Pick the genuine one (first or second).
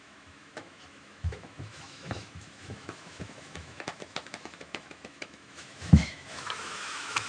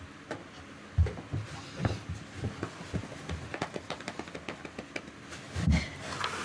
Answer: second